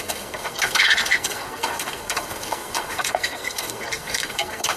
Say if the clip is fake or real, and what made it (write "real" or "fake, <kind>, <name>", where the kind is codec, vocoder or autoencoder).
fake, codec, SNAC